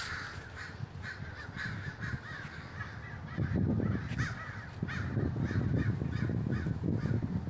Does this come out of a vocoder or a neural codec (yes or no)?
no